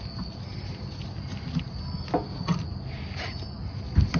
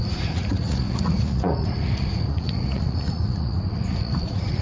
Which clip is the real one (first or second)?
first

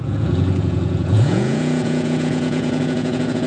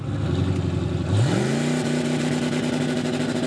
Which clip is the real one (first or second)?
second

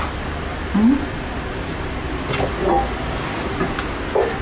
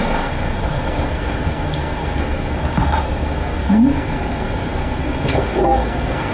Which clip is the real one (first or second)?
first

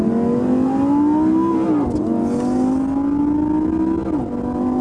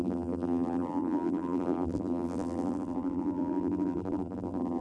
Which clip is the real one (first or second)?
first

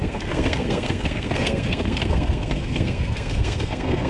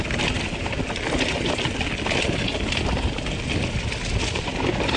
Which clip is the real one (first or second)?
second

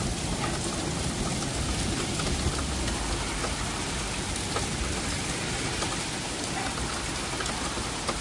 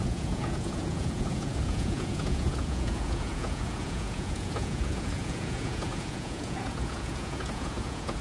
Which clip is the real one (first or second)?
first